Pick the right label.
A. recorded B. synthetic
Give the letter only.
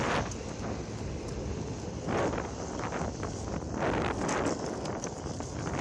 A